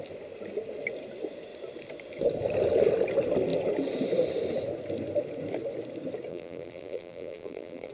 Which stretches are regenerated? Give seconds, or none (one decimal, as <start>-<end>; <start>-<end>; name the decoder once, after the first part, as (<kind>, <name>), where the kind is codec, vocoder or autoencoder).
6.3-7.9 (vocoder, BigVGAN v2)

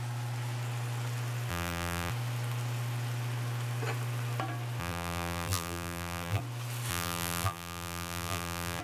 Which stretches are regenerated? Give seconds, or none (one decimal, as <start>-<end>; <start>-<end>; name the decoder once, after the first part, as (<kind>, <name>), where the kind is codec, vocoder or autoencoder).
1.5-2.1 (vocoder, BigVGAN v2); 4.8-6.4; 6.9-8.8

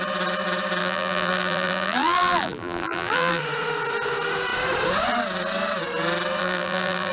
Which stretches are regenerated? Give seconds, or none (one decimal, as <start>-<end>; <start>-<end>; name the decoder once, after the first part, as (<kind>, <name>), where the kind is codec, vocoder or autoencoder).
0.8-3.4 (vocoder, BigVGAN v2); 6.4-7.1

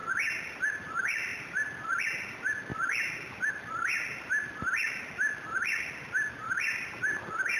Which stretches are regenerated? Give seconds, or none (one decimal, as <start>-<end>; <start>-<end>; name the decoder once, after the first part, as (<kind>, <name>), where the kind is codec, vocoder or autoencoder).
1.3-2.0 (vocoder, BigVGAN v2); 2.7-6.9